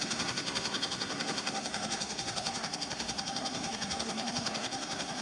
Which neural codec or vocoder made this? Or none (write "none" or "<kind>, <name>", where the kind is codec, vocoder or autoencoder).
codec, SNAC